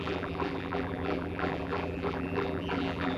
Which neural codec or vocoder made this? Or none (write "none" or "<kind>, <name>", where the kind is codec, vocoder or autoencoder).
vocoder, BigVGAN v2